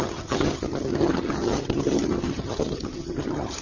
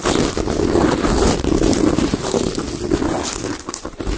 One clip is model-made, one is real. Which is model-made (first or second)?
first